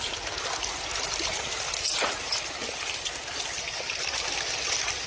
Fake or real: real